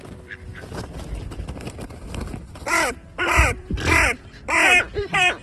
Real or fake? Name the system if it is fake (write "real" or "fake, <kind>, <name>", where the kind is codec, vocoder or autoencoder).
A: fake, vocoder, BigVGAN v2